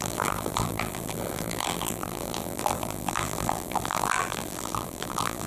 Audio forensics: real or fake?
fake